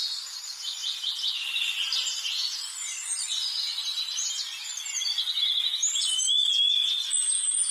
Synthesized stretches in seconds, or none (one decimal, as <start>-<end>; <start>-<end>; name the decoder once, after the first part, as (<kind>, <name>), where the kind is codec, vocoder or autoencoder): none